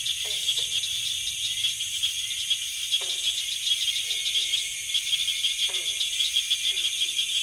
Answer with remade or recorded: recorded